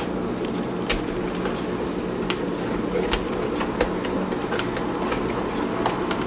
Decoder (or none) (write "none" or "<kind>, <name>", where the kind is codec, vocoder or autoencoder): none